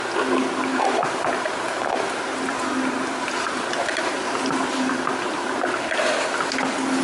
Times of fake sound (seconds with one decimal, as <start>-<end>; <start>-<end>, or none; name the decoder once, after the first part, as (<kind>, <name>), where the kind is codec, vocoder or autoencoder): 0.7-4.9 (vocoder, BigVGAN v2)